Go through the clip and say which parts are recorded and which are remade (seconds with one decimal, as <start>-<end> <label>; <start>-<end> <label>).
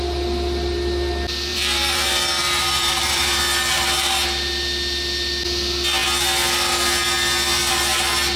0.0-1.5 recorded; 1.5-3.4 remade; 3.4-8.4 recorded